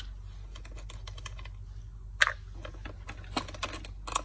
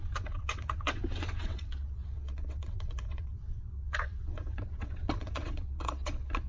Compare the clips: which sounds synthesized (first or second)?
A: second